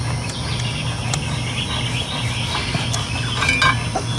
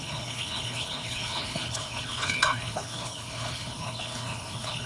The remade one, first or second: second